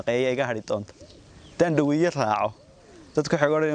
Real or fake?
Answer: real